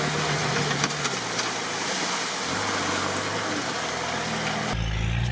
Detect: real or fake real